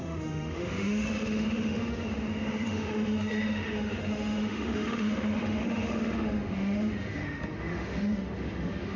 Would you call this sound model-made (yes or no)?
yes